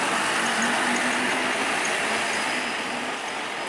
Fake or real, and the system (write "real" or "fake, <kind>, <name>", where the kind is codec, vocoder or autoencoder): fake, vocoder, BigVGAN v2